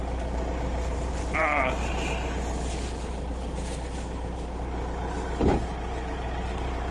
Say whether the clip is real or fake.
fake